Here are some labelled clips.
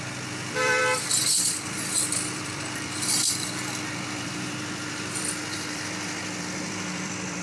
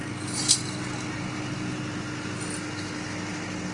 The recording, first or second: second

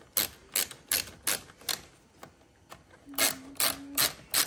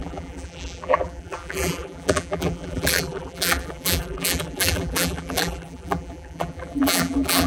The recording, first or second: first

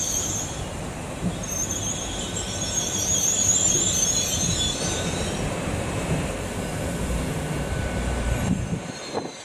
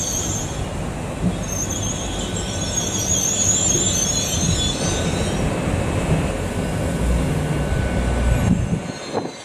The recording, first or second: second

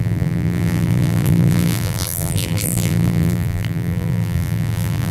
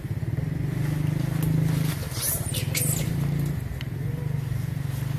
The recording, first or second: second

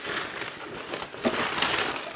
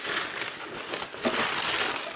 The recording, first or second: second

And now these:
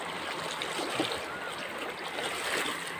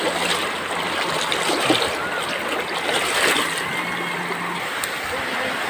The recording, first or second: second